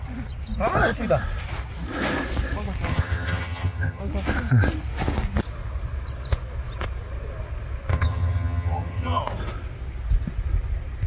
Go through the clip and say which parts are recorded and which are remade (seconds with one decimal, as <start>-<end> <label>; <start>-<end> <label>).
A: 0.0-2.9 recorded; 2.9-4.0 remade; 4.0-7.9 recorded; 7.9-9.2 remade; 9.2-11.1 recorded